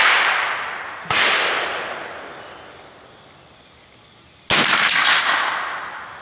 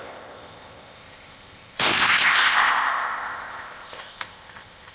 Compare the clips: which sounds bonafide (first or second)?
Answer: first